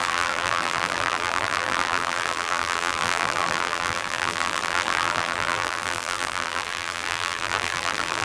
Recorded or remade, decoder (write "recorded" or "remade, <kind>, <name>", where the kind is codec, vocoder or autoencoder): remade, vocoder, BigVGAN v2